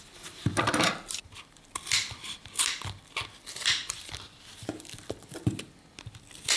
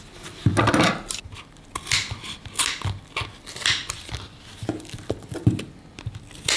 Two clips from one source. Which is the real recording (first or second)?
second